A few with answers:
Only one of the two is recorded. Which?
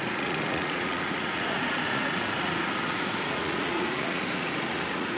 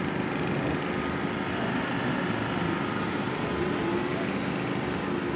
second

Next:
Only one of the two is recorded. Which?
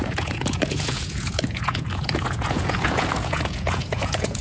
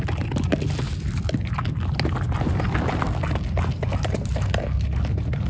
second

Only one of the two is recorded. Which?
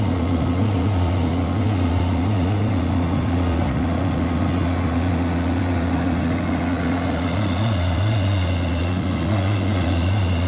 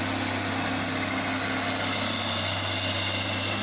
second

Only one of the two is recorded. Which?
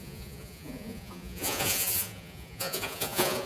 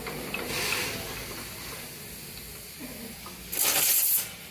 second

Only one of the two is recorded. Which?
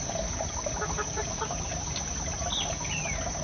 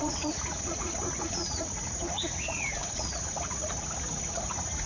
first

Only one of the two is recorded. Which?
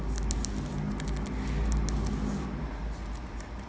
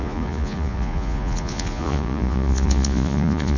first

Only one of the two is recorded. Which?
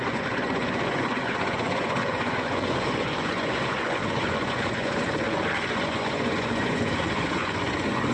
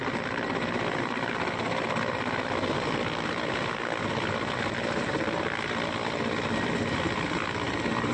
second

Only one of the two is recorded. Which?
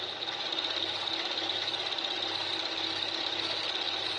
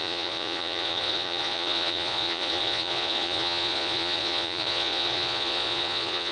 first